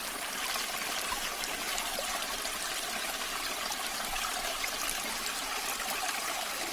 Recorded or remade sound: recorded